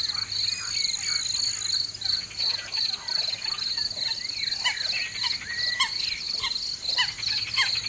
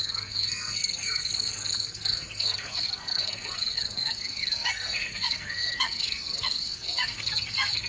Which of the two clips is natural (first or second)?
first